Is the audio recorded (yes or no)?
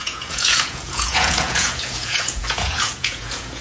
no